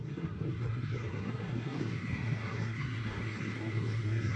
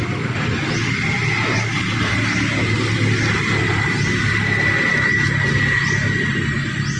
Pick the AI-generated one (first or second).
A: first